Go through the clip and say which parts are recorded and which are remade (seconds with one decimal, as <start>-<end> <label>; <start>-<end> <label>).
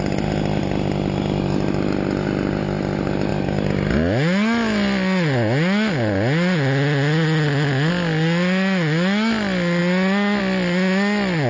0.0-11.5 recorded